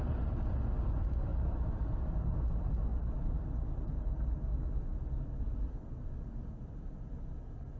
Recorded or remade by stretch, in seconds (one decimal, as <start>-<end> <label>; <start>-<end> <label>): 0.0-7.8 recorded